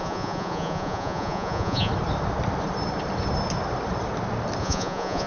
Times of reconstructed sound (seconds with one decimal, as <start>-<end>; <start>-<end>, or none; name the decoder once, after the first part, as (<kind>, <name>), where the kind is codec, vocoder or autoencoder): 0.0-1.9 (vocoder, Vocos); 4.6-5.3